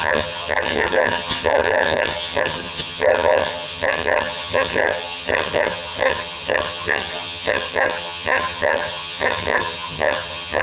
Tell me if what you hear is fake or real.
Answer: fake